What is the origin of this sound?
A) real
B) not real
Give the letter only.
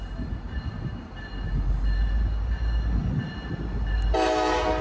A